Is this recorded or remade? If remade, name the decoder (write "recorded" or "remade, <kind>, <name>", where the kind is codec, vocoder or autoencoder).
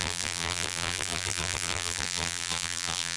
remade, vocoder, BigVGAN v2